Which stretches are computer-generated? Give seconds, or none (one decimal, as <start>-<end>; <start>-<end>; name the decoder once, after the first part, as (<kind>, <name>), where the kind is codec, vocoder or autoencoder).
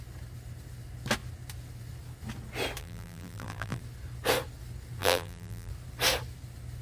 2.8-3.8 (vocoder, BigVGAN v2); 5.0-5.7